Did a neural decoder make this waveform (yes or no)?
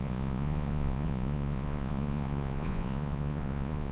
yes